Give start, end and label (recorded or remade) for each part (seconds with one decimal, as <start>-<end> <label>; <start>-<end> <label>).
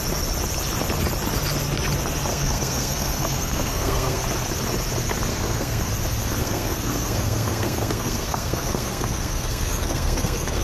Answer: 0.0-2.3 recorded; 2.3-4.2 remade; 4.2-5.3 recorded; 5.3-5.9 remade; 5.9-6.4 recorded; 6.4-10.6 remade